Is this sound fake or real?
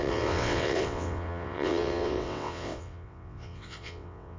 fake